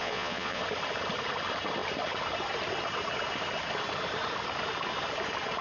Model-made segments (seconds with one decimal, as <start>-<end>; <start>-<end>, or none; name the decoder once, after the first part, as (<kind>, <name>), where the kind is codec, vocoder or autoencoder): 0.0-0.6 (vocoder, Vocos)